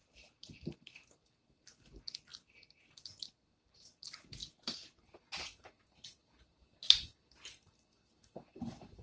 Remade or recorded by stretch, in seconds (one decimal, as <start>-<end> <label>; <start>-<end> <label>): 0.0-1.2 remade; 1.2-4.4 recorded; 4.4-5.4 remade; 5.4-6.2 recorded; 6.2-7.3 remade; 7.3-9.0 recorded